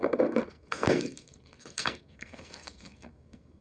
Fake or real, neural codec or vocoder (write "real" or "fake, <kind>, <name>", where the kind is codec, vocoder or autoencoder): fake, codec, SNAC